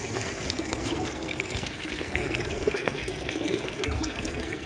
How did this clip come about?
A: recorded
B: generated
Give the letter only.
B